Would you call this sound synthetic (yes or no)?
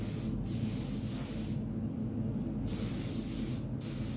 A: no